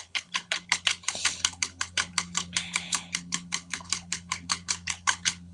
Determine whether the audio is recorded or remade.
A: remade